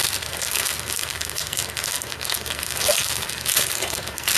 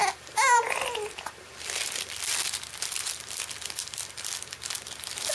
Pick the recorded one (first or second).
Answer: second